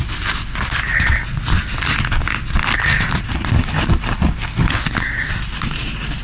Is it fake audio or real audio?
real